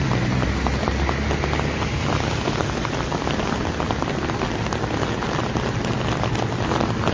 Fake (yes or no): no